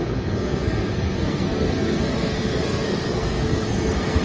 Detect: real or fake fake